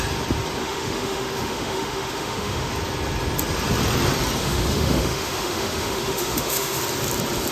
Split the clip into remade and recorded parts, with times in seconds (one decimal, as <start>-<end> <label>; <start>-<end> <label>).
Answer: 0.0-0.6 recorded; 0.6-2.7 remade; 2.7-4.4 recorded; 4.4-6.8 remade; 6.8-7.5 recorded